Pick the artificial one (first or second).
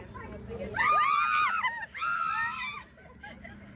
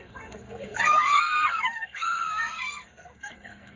second